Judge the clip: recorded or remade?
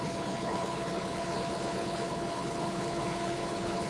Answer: remade